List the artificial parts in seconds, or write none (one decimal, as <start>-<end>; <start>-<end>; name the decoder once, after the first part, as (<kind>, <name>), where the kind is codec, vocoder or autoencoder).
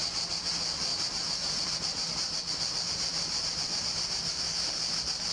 0.9-2.5 (vocoder, BigVGAN v2)